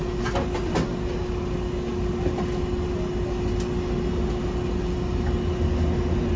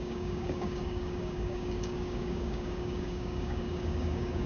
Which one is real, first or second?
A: first